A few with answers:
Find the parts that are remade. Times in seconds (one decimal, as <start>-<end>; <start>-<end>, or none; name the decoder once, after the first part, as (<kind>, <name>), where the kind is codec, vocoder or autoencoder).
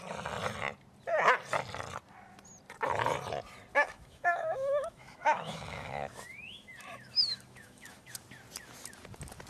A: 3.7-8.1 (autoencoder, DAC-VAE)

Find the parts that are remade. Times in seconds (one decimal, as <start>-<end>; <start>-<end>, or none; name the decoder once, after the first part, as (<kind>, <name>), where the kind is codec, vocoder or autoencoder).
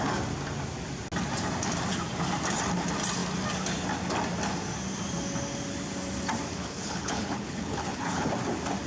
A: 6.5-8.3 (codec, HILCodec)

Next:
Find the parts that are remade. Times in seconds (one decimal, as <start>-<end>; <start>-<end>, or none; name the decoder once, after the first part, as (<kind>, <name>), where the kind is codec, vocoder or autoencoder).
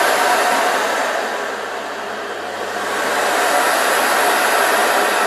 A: none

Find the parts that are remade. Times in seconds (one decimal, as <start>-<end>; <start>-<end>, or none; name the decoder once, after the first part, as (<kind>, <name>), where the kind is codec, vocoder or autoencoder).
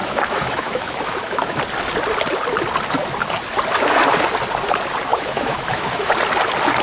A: 0.0-1.6 (autoencoder, DAC-VAE); 5.1-6.1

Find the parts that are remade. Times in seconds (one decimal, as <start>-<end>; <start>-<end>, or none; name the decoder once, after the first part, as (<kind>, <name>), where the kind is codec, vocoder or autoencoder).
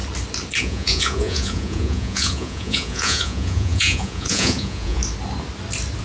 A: 0.6-5.0 (vocoder, Vocos)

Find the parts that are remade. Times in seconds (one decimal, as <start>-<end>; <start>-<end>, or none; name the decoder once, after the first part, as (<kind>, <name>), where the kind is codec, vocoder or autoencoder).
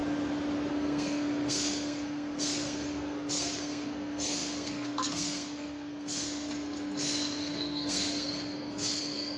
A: 0.7-9.4 (codec, SNAC)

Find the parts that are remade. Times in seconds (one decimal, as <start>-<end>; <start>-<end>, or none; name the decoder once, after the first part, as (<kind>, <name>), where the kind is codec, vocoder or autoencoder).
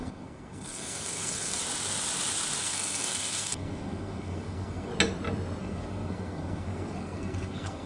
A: 0.0-1.6 (codec, SNAC); 2.6-4.9; 5.6-7.9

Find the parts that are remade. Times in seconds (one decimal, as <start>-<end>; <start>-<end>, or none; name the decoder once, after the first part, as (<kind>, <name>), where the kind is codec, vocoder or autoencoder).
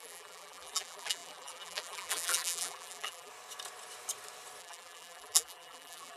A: 0.0-3.3 (vocoder, BigVGAN v2); 4.6-6.2